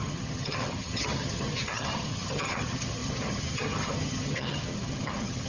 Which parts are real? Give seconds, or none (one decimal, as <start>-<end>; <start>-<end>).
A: none